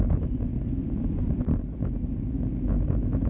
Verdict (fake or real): real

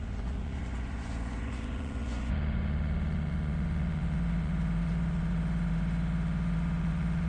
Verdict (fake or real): fake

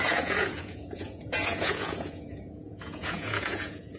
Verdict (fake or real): fake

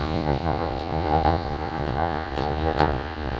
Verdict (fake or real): fake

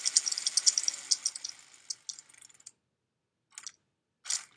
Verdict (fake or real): real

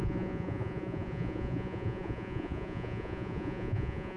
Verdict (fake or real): fake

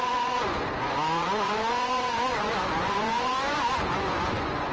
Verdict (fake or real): fake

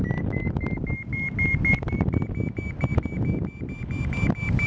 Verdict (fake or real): real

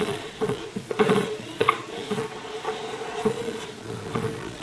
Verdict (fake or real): fake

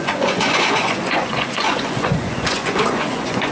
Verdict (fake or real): fake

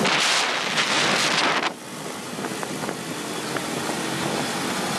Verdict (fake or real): real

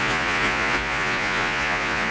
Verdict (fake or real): fake